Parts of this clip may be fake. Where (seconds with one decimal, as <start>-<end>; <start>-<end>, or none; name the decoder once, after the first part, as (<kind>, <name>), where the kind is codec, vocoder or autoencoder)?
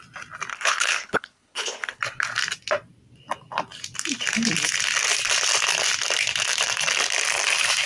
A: 0.5-2.0 (codec, HILCodec)